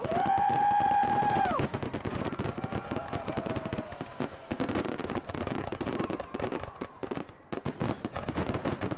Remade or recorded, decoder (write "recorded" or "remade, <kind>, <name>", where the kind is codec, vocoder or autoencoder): remade, vocoder, Vocos